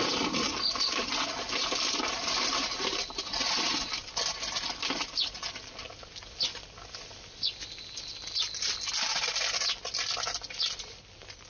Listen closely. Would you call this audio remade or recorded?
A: recorded